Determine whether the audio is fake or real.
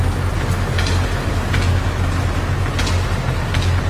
real